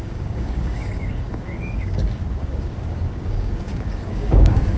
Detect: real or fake fake